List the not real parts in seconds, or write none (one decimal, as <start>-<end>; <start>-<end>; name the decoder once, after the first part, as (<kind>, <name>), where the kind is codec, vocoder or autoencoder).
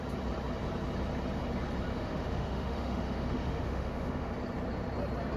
1.9-4.3 (autoencoder, DAC-VAE)